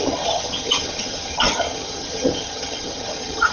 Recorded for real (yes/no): no